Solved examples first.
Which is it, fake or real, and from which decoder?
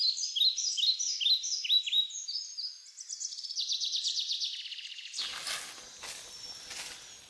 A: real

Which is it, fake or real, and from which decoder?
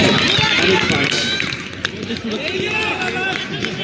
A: fake, vocoder, BigVGAN v2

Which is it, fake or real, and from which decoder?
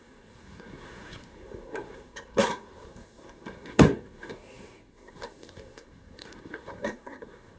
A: fake, codec, SNAC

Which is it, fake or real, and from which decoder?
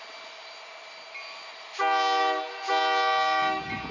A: real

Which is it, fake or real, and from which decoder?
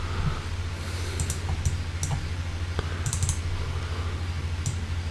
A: real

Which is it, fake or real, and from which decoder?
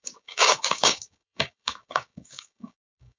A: fake, codec, DAC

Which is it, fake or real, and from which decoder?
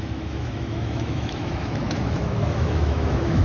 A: fake, autoencoder, DAC-VAE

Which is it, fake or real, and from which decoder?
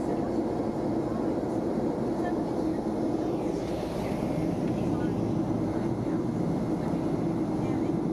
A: real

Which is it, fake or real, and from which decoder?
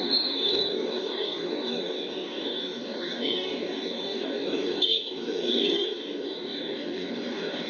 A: fake, codec, DAC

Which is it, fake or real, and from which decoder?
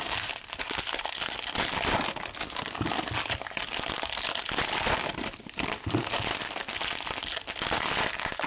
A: real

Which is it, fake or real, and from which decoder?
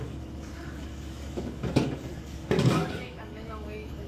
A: fake, codec, DAC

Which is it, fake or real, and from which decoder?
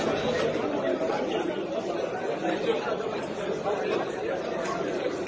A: real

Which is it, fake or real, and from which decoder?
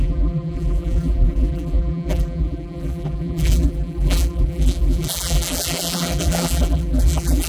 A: fake, vocoder, BigVGAN v2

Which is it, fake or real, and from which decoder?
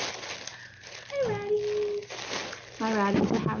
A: real